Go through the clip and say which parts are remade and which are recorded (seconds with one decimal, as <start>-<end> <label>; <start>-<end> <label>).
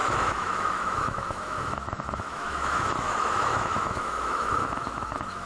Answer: 0.0-5.5 remade